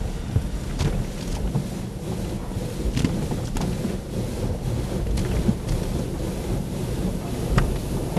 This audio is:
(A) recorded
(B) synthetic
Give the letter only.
A